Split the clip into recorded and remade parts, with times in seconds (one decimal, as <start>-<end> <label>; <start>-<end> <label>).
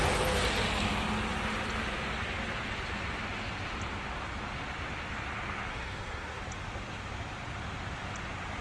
0.0-5.7 recorded; 5.7-6.4 remade; 6.4-8.6 recorded